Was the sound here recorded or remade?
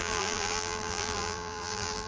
remade